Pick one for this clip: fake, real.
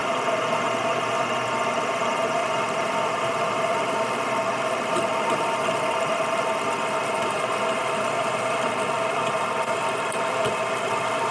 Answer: fake